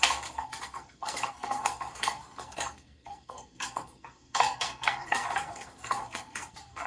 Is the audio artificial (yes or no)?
yes